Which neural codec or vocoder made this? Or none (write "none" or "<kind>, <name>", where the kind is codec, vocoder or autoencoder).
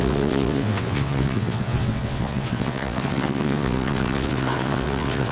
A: vocoder, WaveNeXt